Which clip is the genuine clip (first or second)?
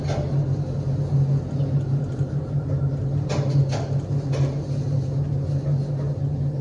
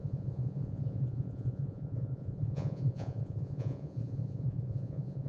first